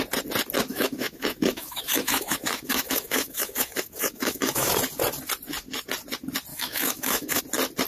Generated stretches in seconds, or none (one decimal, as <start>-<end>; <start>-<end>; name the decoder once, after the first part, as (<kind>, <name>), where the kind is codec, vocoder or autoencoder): 0.7-4.7 (autoencoder, DAC-VAE); 6.5-7.4